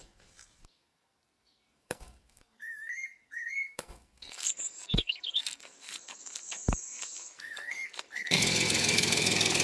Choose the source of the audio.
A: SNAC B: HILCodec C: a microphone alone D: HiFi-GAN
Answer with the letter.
A